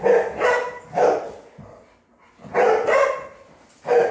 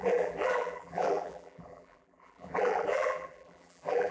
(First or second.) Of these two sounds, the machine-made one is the second